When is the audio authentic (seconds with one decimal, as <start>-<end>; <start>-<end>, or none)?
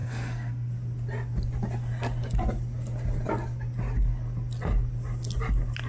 0.7-5.9